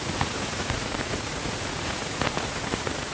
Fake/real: fake